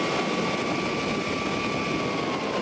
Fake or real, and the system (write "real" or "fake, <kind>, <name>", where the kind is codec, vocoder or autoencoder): real